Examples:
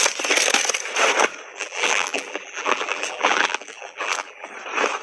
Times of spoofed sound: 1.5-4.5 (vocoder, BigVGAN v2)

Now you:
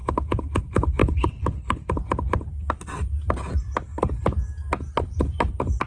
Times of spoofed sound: 1.0-1.9 (codec, HILCodec)

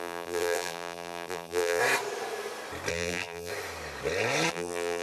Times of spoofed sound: 0.0-1.8 (vocoder, BigVGAN v2); 2.9-3.5; 4.5-5.0

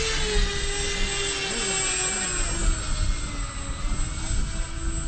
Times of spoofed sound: none

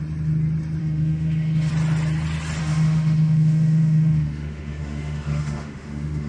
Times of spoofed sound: 0.8-1.7 (autoencoder, DAC-VAE); 2.6-6.3